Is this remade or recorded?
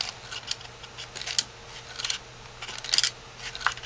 recorded